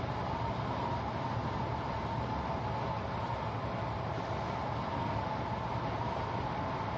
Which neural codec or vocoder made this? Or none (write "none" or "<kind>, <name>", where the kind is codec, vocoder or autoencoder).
none